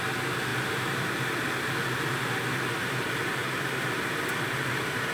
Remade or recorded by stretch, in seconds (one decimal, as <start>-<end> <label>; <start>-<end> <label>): 0.0-0.5 recorded; 0.5-1.3 remade; 1.3-3.4 recorded; 3.4-4.0 remade; 4.0-5.1 recorded